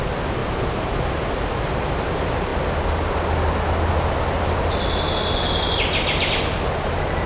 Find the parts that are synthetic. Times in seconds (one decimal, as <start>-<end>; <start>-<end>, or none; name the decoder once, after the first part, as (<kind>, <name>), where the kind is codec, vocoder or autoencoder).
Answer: none